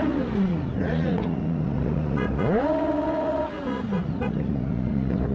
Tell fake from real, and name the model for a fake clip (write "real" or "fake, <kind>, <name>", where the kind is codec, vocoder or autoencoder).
fake, vocoder, Vocos